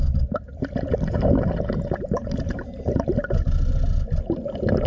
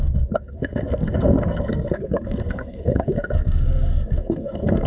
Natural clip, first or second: first